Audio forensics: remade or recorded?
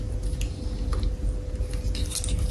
recorded